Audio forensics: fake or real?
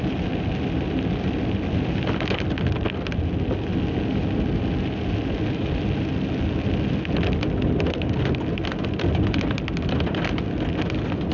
real